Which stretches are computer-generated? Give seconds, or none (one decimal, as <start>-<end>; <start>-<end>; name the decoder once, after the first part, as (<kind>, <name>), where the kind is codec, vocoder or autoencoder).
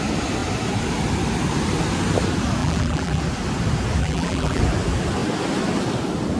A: 2.6-3.2 (vocoder, BigVGAN v2); 4.0-4.6